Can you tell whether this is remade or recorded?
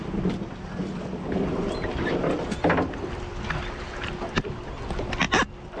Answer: recorded